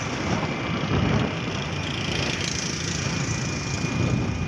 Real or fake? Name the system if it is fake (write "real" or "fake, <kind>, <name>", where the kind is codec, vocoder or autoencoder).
real